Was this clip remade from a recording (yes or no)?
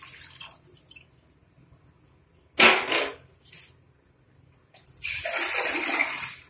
no